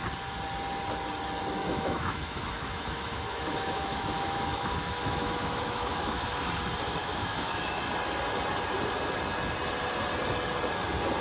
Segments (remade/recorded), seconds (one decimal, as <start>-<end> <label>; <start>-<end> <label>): 0.0-1.6 recorded; 1.6-6.5 remade; 6.5-7.0 recorded; 7.0-7.8 remade; 7.8-11.2 recorded